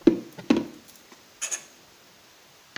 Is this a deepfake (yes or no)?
no